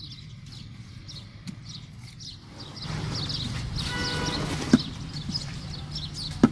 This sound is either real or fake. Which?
real